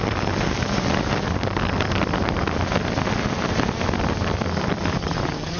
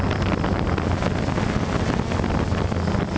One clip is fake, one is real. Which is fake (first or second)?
first